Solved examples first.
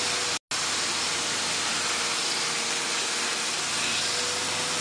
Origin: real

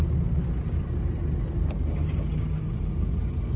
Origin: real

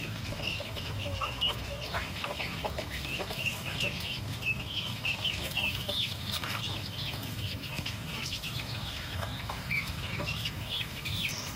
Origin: fake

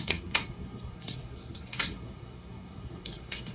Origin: fake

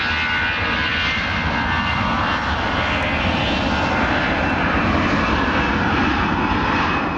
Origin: real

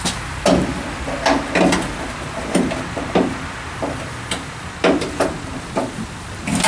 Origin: real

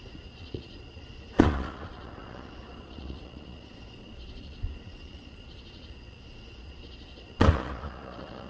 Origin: fake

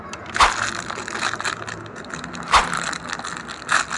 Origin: real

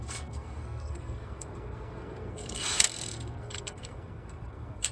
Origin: fake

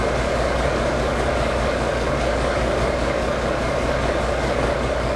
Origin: fake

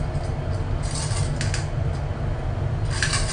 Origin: real